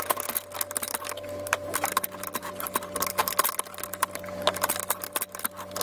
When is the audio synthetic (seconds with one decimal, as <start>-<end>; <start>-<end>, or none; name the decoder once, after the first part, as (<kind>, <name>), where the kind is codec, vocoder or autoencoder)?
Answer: 0.0-3.2 (vocoder, BigVGAN v2); 4.7-5.8